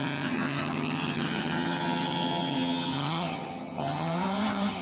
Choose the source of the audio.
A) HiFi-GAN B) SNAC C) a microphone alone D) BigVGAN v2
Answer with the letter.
A